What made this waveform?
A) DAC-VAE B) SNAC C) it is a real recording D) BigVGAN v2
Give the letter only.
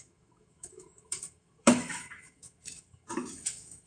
A